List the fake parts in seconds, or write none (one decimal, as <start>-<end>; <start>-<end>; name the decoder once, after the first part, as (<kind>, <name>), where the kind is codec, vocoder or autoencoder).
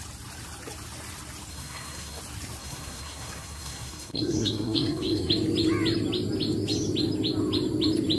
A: 1.5-2.2 (codec, SNAC); 2.6-5.3